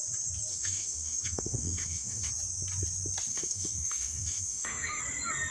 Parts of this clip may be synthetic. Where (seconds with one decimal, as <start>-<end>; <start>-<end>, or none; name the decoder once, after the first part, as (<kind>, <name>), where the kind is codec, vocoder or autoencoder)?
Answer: 0.5-2.3 (autoencoder, DAC-VAE); 3.3-5.0